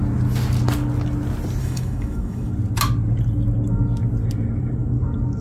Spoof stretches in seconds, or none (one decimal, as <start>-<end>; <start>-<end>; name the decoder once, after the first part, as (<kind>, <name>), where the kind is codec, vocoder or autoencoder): 1.6-2.5 (autoencoder, DAC-VAE)